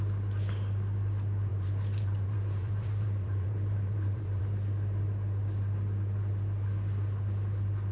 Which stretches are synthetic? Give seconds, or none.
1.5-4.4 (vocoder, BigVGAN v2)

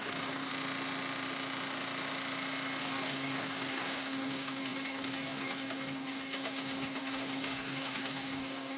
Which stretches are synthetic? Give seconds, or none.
0.0-0.5 (codec, DAC); 2.8-8.8

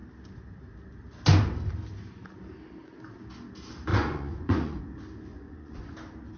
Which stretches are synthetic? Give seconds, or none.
3.9-4.8 (vocoder, Vocos); 5.3-5.9

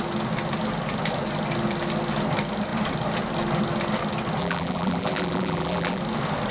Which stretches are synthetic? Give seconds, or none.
4.4-6.0 (vocoder, BigVGAN v2)